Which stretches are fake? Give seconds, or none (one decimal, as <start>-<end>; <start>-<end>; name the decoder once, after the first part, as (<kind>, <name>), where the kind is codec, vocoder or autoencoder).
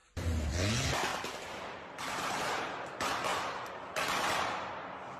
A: 1.1-2.7 (vocoder, BigVGAN v2)